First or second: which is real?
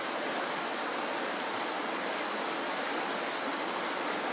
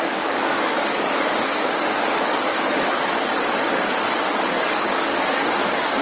first